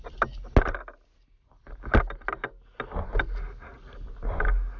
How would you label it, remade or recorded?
recorded